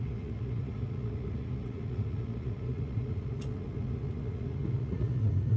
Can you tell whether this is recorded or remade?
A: remade